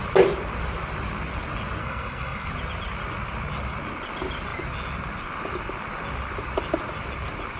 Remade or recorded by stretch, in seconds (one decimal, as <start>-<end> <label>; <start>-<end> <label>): 0.0-1.8 recorded; 1.8-2.5 remade; 2.5-7.6 recorded